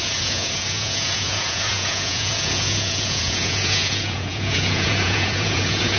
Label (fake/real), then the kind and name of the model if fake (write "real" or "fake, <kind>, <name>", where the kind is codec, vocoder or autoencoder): fake, vocoder, Vocos